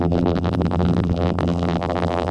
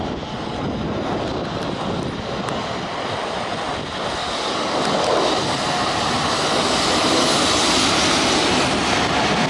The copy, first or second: first